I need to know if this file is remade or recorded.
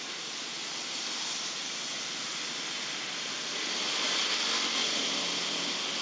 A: recorded